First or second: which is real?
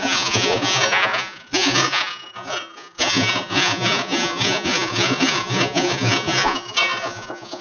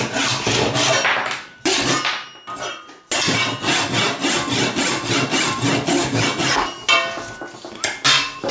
second